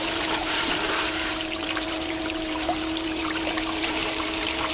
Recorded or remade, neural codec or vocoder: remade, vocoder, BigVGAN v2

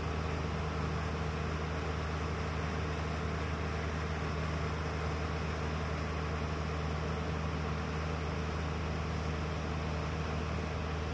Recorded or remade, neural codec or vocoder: recorded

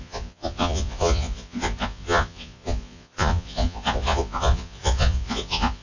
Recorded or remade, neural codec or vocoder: remade, vocoder, Vocos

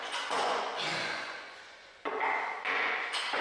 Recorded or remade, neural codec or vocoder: remade, vocoder, Vocos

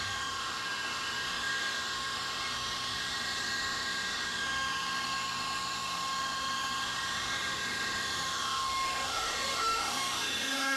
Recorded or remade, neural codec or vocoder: remade, autoencoder, DAC-VAE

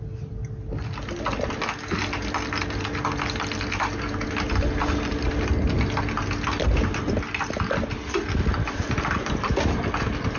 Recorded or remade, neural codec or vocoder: recorded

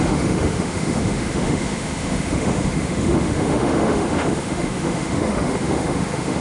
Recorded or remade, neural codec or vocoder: remade, autoencoder, DAC-VAE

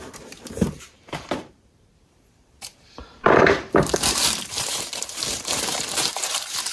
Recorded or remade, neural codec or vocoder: remade, vocoder, BigVGAN v2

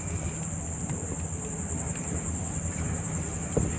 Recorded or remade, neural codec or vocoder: recorded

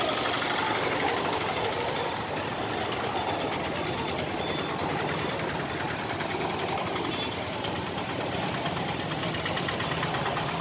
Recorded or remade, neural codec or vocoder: recorded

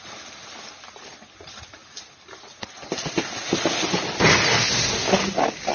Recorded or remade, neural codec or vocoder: recorded